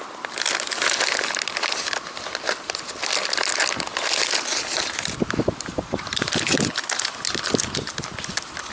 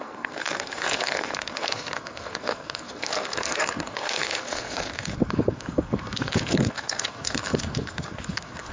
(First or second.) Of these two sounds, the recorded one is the first